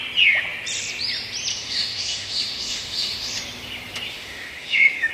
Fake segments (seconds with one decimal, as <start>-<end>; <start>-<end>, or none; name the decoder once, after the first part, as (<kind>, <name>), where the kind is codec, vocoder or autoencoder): 1.5-3.4 (autoencoder, DAC-VAE); 4.1-5.1